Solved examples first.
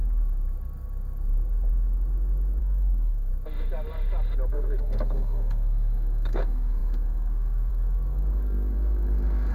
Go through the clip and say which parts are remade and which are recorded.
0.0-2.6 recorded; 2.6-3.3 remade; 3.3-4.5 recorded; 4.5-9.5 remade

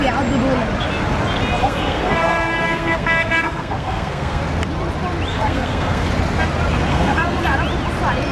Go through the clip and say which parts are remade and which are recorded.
0.0-1.6 recorded; 1.6-4.4 remade; 4.4-5.3 recorded; 5.3-6.1 remade; 6.1-6.9 recorded; 6.9-7.4 remade; 7.4-8.3 recorded

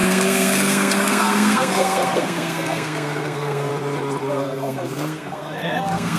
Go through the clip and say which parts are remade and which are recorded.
0.0-3.7 remade; 3.7-4.3 recorded; 4.3-6.2 remade

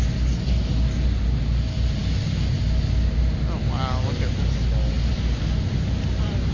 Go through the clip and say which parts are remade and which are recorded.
0.0-6.5 recorded

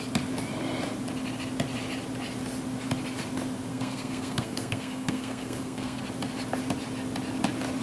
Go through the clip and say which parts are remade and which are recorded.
0.0-3.7 recorded; 3.7-6.0 remade; 6.0-7.8 recorded